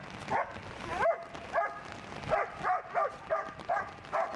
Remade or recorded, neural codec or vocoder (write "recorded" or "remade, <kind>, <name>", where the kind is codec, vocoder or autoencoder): recorded